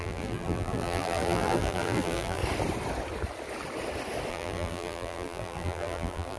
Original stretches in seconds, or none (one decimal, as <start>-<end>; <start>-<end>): 2.4-4.3